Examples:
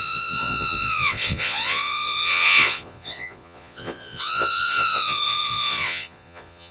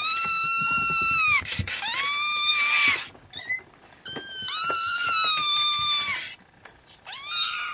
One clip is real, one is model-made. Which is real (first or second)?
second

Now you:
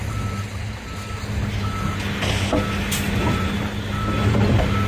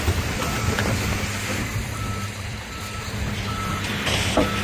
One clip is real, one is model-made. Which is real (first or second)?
first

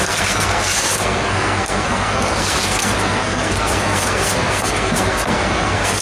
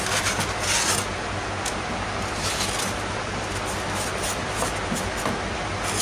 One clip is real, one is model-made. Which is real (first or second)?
second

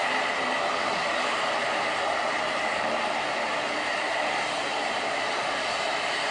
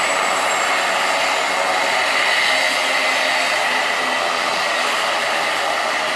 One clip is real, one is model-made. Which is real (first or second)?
second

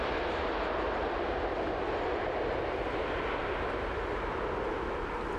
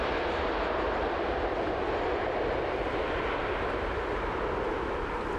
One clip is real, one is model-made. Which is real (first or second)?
first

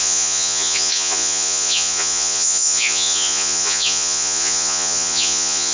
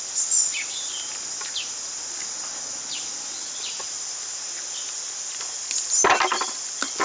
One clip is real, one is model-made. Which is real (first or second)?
second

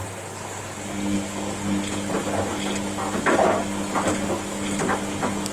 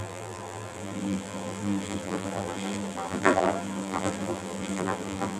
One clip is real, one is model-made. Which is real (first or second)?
first